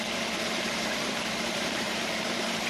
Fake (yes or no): yes